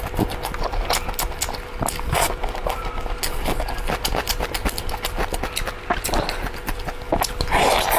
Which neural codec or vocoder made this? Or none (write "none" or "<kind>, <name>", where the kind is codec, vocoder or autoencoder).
none